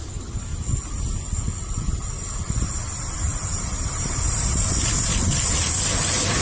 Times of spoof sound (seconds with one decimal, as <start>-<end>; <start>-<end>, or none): 3.3-4.1